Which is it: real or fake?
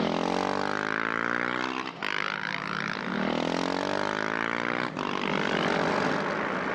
real